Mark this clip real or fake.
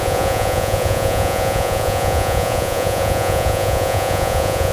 fake